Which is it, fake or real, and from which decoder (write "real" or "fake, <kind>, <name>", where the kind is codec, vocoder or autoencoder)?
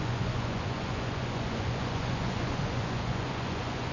fake, vocoder, Vocos